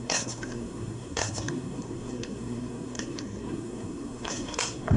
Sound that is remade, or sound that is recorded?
remade